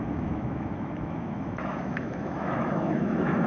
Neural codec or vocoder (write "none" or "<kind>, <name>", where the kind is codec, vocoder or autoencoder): autoencoder, DAC-VAE